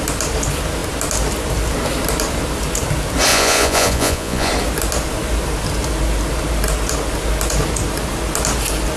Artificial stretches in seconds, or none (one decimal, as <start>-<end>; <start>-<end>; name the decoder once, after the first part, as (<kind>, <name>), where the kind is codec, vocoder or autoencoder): 3.3-4.5 (vocoder, Vocos)